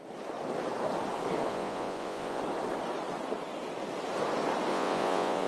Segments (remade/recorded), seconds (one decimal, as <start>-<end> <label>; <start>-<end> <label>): 0.0-1.5 recorded; 1.5-2.4 remade; 2.4-4.7 recorded; 4.7-5.5 remade